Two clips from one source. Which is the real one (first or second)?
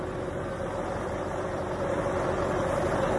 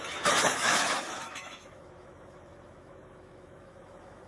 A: first